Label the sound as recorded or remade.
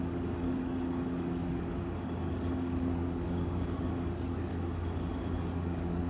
remade